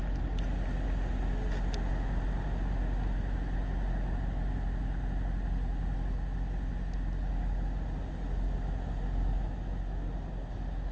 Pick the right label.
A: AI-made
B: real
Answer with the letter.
B